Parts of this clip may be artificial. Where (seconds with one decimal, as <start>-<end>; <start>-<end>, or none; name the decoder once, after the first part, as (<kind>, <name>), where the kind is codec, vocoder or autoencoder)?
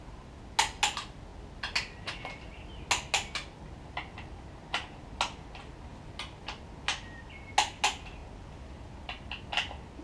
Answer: none